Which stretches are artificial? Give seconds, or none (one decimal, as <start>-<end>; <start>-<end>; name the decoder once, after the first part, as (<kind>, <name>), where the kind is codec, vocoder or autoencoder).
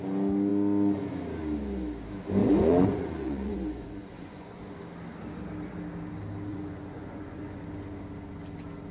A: 2.4-4.6 (vocoder, Vocos); 6.5-7.6